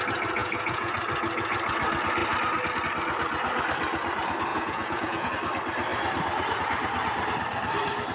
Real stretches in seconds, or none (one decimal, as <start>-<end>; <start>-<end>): 0.0-0.4; 0.9-4.5; 5.3-8.1